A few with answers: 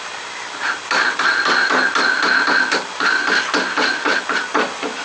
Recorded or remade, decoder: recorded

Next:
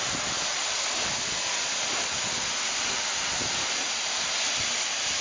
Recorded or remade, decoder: remade, vocoder, BigVGAN v2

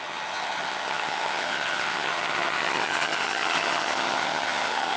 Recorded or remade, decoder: remade, vocoder, HiFi-GAN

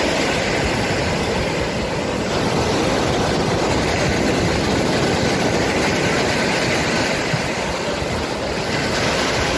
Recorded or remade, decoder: recorded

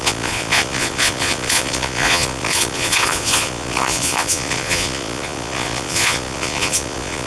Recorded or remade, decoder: remade, vocoder, Vocos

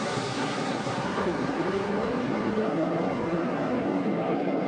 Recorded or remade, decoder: remade, codec, SNAC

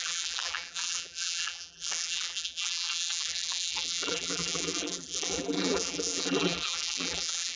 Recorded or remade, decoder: remade, vocoder, BigVGAN v2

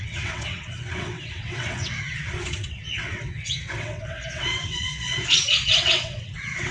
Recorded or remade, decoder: remade, vocoder, WaveNeXt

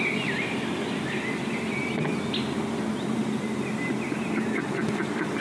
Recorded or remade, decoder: recorded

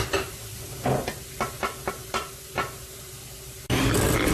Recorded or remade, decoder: remade, vocoder, BigVGAN v2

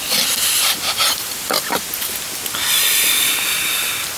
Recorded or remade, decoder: recorded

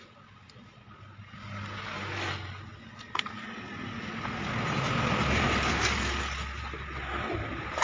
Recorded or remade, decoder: recorded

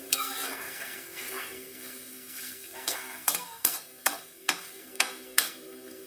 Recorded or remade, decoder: remade, codec, SNAC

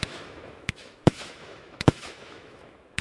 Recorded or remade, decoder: remade, autoencoder, DAC-VAE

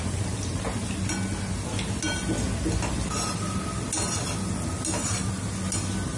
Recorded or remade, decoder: recorded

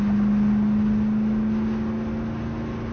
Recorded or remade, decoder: recorded